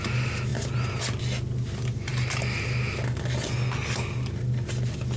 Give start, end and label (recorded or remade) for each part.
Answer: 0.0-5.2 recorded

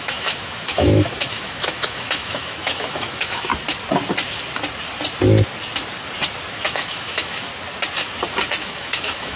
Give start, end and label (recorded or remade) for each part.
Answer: 0.0-3.5 remade; 3.5-6.5 recorded; 6.5-7.5 remade; 7.5-8.6 recorded; 8.6-9.4 remade

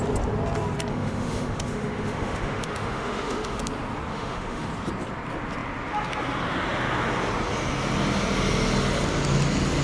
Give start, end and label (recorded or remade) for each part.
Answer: 0.0-0.9 recorded; 0.9-3.6 remade; 3.6-4.1 recorded; 4.1-4.7 remade; 4.7-9.8 recorded

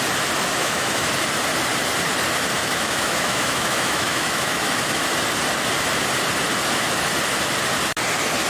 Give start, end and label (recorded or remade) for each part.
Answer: 0.0-0.6 recorded; 0.6-1.1 remade; 1.1-2.6 recorded; 2.6-5.0 remade; 5.0-8.5 recorded